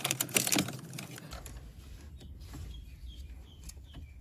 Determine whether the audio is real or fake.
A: real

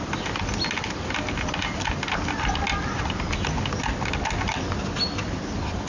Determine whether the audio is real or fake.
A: real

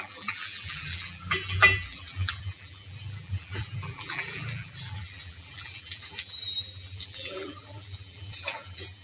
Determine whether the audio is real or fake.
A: fake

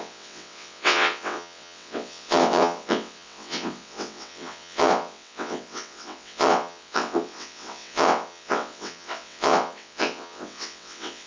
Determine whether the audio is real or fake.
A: fake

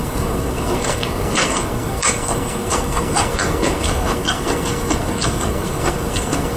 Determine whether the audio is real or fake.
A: fake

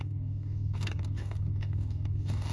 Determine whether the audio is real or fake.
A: fake